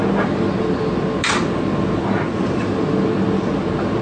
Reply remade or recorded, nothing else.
recorded